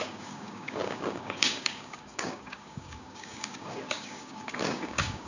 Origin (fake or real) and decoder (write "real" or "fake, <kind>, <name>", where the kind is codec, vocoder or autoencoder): fake, codec, DAC